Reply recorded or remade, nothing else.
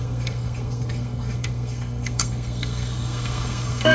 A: remade